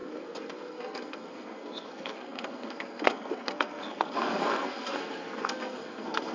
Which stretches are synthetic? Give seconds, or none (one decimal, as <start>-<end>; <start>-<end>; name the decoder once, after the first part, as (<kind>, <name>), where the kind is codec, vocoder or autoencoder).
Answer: 0.0-6.3 (codec, SNAC)